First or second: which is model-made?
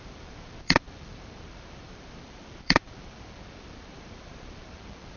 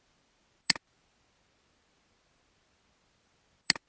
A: first